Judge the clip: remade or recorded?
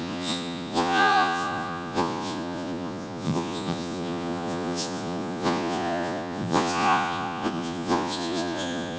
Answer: remade